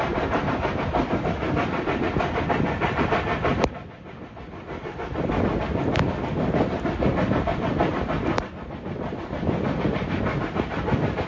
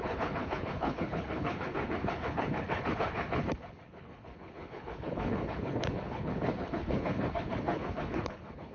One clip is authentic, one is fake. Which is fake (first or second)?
second